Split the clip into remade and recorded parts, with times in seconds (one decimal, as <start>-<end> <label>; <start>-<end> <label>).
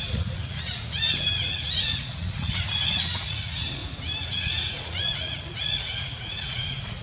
0.0-3.8 remade; 3.8-4.3 recorded; 4.3-7.0 remade